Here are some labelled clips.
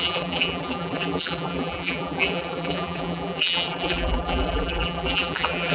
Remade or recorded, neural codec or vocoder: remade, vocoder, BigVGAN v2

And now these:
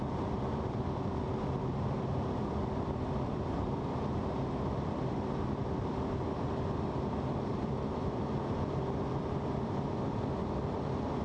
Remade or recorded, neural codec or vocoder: remade, vocoder, BigVGAN v2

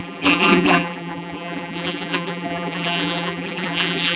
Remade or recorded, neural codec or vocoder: remade, vocoder, BigVGAN v2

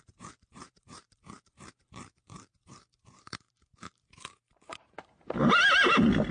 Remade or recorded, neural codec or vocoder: remade, vocoder, BigVGAN v2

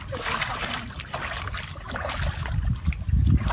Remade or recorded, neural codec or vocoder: remade, vocoder, BigVGAN v2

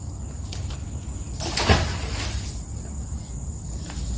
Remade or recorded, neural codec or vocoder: recorded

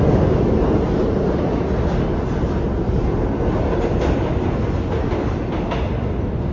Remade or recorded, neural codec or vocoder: recorded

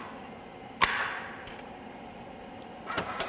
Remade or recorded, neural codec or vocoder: remade, vocoder, BigVGAN v2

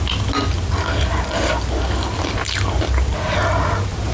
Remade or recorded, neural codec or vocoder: recorded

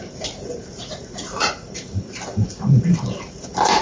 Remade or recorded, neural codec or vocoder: remade, vocoder, BigVGAN v2